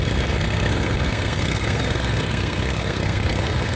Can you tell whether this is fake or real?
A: fake